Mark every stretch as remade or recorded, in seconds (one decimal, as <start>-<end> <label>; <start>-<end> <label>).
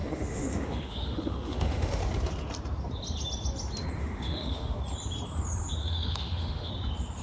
0.0-2.0 remade; 2.0-4.0 recorded; 4.0-4.8 remade; 4.8-5.8 recorded; 5.8-6.7 remade; 6.7-7.2 recorded